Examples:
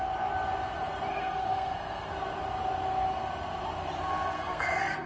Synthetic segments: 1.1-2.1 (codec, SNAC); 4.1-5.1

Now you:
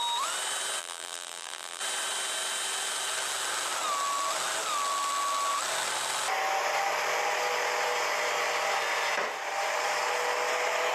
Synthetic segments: 0.8-1.8 (vocoder, BigVGAN v2)

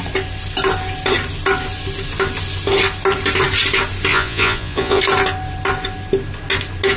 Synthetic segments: 4.1-5.0 (vocoder, Vocos)

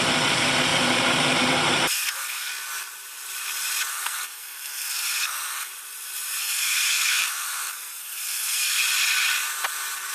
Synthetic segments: 1.9-2.5 (codec, SNAC); 3.9-5.7; 6.4-8.8

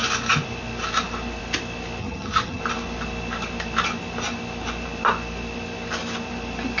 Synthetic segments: 2.0-2.6 (vocoder, HiFi-GAN)

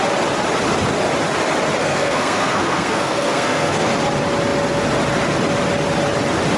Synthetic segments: 1.8-3.9 (codec, SNAC)